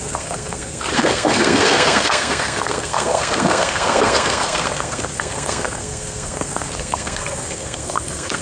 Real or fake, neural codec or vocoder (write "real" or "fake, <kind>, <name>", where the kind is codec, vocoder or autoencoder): fake, codec, SNAC